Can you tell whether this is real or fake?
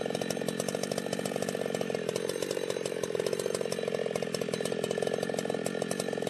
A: real